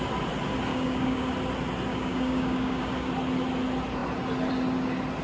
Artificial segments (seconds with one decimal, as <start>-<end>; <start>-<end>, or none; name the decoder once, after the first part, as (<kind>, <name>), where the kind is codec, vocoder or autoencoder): 0.7-1.3 (codec, DAC); 1.9-3.1

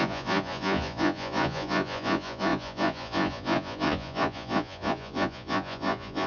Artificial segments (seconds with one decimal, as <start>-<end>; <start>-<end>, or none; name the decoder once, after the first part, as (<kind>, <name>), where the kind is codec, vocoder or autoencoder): 0.0-6.3 (vocoder, Vocos)

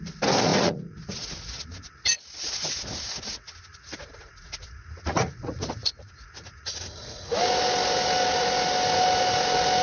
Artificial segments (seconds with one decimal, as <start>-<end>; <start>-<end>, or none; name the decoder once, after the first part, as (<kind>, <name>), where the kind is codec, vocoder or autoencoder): 0.5-1.3 (vocoder, Vocos); 3.7-7.4

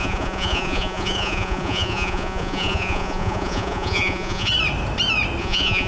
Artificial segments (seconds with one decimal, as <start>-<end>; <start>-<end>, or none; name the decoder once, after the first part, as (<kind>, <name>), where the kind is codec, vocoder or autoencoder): 0.0-4.5 (vocoder, Vocos); 5.4-5.9